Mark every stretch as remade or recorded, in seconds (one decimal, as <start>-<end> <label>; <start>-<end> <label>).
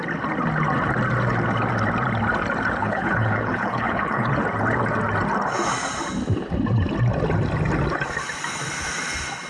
0.0-2.8 recorded; 2.8-4.3 remade; 4.3-9.5 recorded